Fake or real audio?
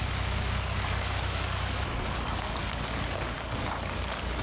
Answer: fake